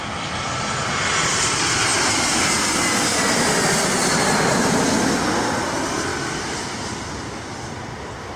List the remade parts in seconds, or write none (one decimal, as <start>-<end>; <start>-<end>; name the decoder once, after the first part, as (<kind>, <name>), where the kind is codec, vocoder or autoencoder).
none